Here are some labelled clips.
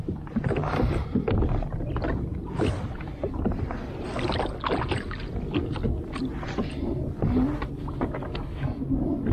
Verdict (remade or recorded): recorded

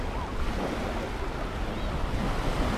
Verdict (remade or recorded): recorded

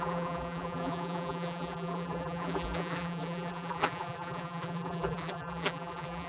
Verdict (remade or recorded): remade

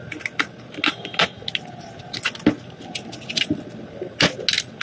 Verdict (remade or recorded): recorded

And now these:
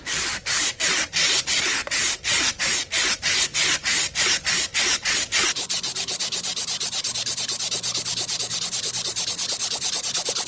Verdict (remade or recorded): recorded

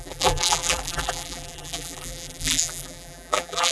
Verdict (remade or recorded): remade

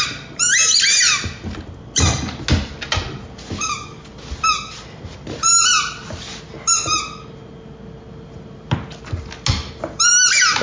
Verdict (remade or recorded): recorded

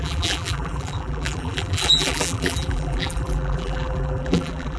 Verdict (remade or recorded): remade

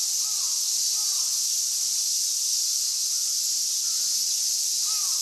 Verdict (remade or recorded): recorded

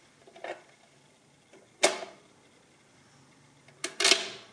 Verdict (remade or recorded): recorded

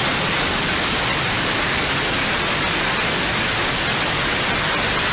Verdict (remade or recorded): recorded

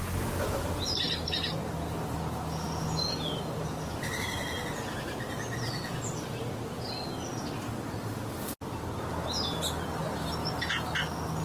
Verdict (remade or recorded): recorded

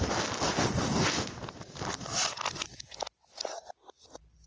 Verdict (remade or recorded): recorded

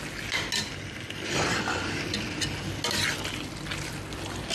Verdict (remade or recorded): recorded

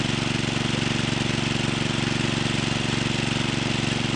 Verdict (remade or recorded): recorded